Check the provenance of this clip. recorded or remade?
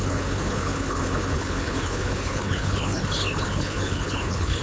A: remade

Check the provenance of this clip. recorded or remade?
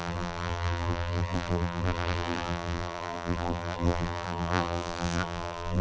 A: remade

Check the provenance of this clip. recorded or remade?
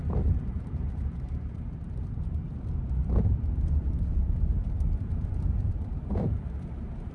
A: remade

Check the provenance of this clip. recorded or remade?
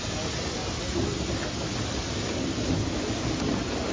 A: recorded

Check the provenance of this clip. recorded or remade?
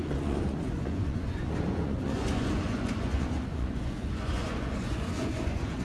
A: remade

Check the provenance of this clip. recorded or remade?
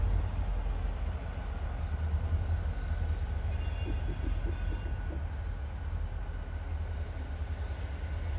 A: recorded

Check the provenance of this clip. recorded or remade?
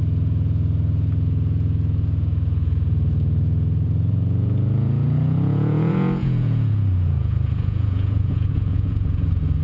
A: remade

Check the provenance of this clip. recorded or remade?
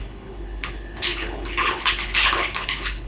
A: remade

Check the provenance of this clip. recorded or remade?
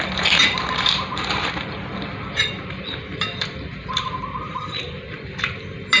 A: remade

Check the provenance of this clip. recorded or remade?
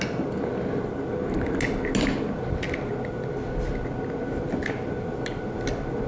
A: recorded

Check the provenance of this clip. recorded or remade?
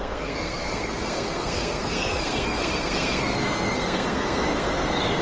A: remade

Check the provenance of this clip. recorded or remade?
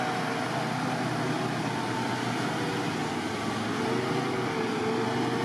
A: recorded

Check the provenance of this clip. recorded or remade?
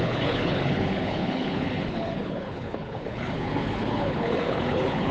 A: remade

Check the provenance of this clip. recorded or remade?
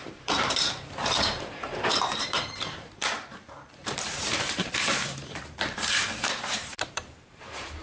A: remade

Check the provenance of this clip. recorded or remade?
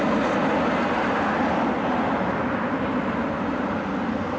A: recorded